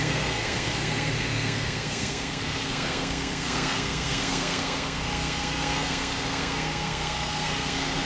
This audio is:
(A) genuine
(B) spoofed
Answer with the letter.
B